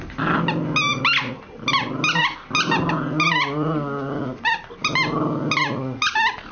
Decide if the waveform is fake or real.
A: real